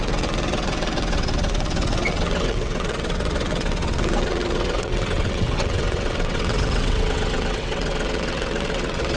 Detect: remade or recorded remade